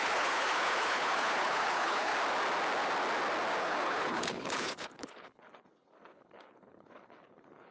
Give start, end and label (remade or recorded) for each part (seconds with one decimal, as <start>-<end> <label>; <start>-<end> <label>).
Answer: 0.0-2.1 remade; 2.1-3.6 recorded; 3.6-7.7 remade